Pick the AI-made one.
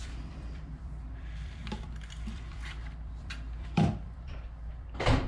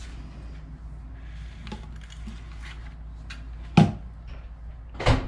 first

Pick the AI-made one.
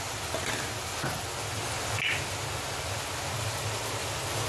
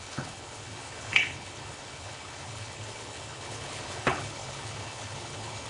second